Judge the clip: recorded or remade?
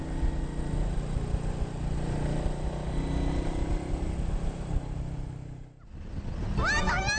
recorded